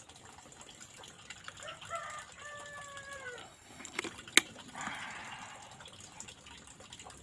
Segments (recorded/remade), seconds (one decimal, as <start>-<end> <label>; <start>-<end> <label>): 0.0-3.4 recorded; 3.4-4.0 remade; 4.0-7.2 recorded